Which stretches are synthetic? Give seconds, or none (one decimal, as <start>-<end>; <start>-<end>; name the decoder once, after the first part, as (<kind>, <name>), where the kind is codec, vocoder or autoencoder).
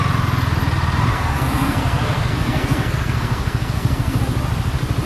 1.1-4.2 (codec, SNAC)